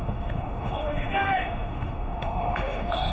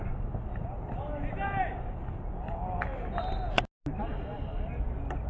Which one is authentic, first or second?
second